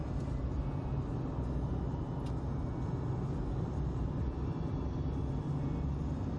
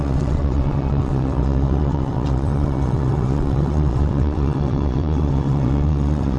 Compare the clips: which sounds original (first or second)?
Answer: first